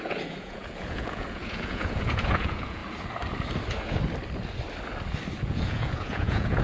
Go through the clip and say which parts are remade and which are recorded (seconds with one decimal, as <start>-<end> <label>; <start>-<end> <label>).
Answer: 0.0-2.8 remade; 2.8-5.4 recorded; 5.4-6.6 remade